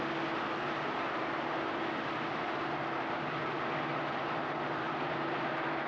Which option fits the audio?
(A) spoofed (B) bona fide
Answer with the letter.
B